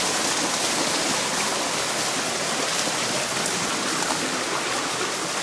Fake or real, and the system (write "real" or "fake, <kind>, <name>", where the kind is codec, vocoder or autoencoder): real